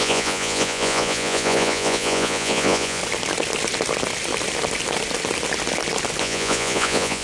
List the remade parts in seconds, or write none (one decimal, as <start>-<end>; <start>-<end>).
0.0-3.0; 6.2-7.2